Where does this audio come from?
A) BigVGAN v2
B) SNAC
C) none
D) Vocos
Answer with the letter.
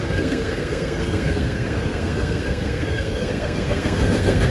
B